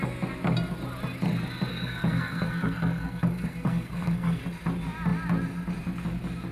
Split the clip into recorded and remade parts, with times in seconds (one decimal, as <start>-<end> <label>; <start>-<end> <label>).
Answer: 0.0-1.7 recorded; 1.7-4.4 remade; 4.4-6.5 recorded